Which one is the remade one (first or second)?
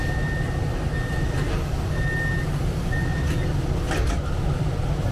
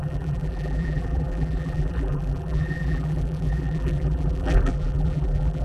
second